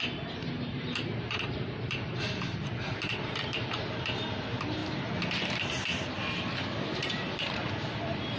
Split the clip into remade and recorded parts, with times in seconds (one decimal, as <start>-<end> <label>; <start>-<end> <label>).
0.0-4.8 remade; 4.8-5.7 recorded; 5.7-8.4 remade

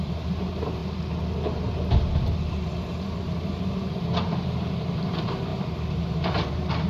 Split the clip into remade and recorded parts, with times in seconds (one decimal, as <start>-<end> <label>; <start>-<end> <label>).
0.0-0.8 remade; 0.8-2.2 recorded; 2.2-6.9 remade

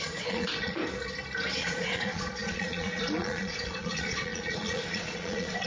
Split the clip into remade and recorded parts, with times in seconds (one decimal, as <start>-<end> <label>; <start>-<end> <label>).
0.0-0.8 remade; 0.8-1.6 recorded; 1.6-5.7 remade

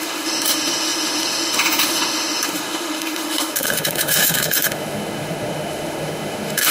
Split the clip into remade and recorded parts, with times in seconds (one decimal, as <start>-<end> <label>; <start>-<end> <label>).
0.0-6.7 remade